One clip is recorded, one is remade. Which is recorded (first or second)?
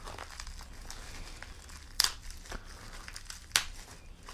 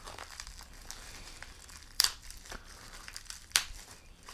first